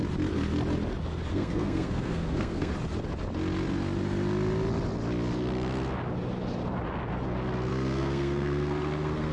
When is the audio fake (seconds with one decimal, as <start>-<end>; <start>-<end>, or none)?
1.3-2.7; 7.7-9.3